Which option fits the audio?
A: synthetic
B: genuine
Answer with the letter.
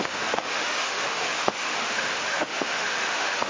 A